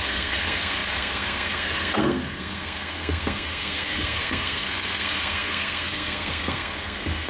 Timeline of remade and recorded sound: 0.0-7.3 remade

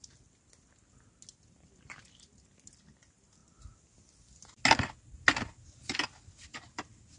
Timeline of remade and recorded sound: 0.0-7.2 recorded

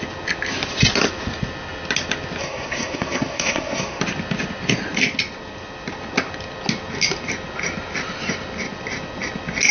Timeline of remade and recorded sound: 0.0-2.4 recorded; 2.4-4.0 remade; 4.0-9.7 recorded

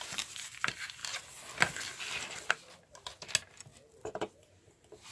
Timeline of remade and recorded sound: 0.0-5.1 recorded

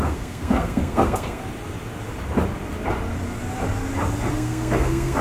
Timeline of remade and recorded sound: 0.0-1.4 remade; 1.4-4.3 recorded; 4.3-5.2 remade

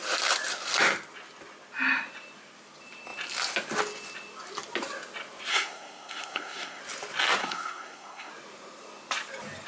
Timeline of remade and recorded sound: 0.0-5.5 recorded; 5.5-6.8 remade; 6.8-7.4 recorded; 7.4-8.3 remade; 8.3-9.7 recorded

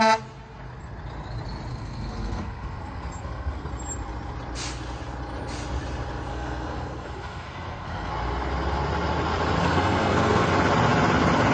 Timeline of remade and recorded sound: 0.0-1.7 recorded; 1.7-3.7 remade; 3.7-6.3 recorded; 6.3-8.1 remade; 8.1-9.6 recorded; 9.6-10.5 remade; 10.5-11.5 recorded